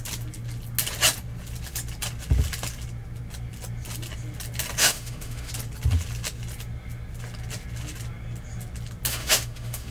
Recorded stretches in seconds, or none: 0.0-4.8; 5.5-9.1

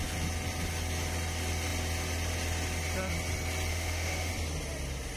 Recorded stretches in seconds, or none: 0.0-3.7; 4.3-5.2

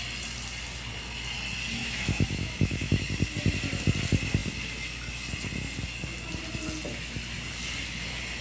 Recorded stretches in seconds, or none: 0.0-1.8; 3.0-8.4